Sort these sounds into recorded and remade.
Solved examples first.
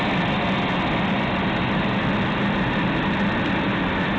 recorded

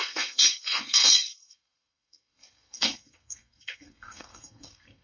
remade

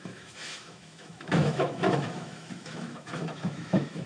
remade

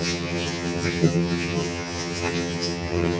remade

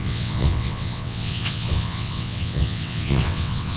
remade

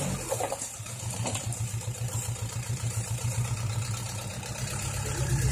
remade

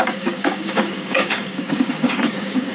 remade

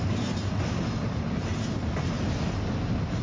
recorded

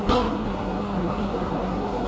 remade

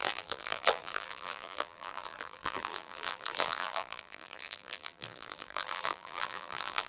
remade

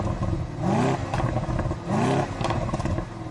recorded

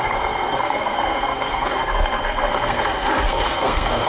remade